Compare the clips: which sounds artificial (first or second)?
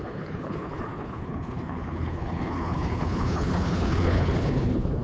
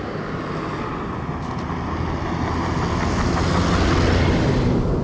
first